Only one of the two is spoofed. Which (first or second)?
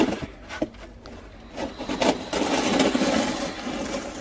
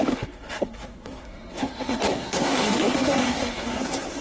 second